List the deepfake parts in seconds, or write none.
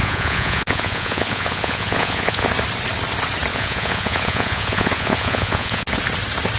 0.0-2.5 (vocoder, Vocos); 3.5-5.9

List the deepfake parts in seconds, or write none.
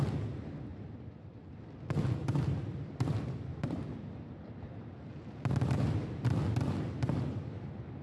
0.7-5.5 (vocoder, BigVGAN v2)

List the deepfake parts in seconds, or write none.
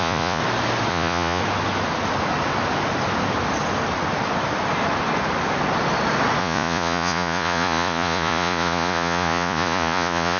0.0-0.4 (vocoder, Vocos); 0.9-1.4; 6.4-10.4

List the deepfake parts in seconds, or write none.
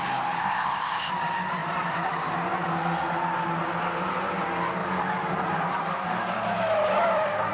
0.4-1.1 (codec, ZipCodec)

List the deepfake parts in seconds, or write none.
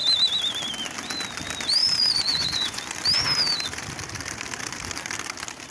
1.8-2.8 (vocoder, Vocos)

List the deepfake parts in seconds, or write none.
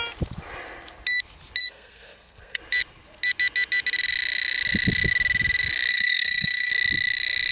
1.6-2.6 (codec, SNAC); 5.9-6.7